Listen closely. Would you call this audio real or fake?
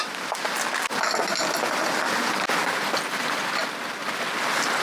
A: real